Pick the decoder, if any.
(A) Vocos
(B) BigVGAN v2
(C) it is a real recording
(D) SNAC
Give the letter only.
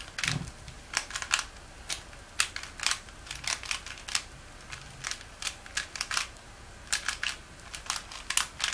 C